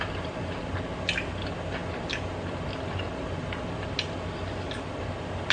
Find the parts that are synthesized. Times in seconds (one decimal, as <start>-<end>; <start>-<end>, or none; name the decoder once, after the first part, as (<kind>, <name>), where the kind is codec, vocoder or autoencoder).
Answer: none

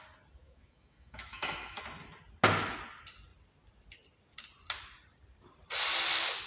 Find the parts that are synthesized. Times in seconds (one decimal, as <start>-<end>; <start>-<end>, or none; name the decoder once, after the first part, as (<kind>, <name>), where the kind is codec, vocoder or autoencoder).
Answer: 0.4-1.8 (autoencoder, DAC-VAE)

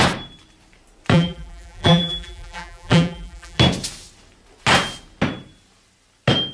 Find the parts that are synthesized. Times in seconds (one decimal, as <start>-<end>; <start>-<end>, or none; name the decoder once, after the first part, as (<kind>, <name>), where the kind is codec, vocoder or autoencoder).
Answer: 1.1-3.6 (vocoder, BigVGAN v2)

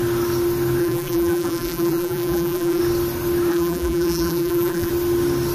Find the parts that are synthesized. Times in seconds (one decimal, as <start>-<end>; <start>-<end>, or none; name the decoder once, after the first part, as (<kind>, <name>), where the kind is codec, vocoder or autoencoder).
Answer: 0.8-2.8 (vocoder, BigVGAN v2); 3.5-4.9

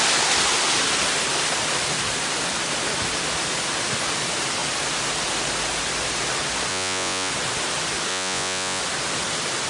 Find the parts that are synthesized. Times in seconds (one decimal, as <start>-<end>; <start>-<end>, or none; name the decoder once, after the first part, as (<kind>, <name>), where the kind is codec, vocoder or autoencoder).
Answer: 6.7-7.3 (vocoder, Vocos); 8.1-8.8

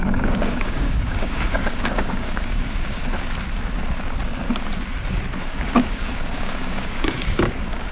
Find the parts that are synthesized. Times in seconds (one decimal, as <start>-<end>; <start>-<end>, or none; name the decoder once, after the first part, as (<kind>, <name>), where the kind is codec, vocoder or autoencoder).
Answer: 0.0-3.0 (codec, DAC); 5.4-7.9

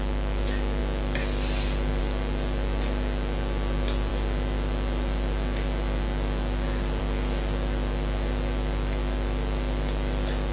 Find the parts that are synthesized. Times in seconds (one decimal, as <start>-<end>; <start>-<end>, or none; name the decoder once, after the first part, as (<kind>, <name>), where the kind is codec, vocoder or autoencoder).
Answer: none